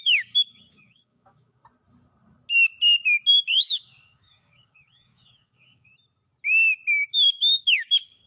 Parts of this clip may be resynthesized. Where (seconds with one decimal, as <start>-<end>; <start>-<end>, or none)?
0.0-1.6; 3.3-5.9; 7.1-8.3

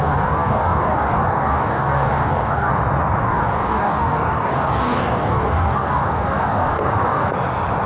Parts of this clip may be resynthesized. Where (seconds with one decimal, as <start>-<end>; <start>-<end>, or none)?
0.0-2.7; 3.2-7.3

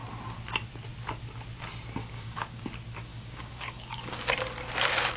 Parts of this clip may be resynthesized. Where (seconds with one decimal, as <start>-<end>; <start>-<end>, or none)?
2.0-2.6; 3.1-4.3